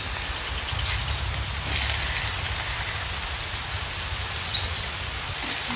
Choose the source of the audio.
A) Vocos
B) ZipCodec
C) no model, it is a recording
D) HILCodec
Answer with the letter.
C